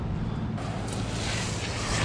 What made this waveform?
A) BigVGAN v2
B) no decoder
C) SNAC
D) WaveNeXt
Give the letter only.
B